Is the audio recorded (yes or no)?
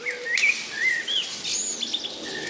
yes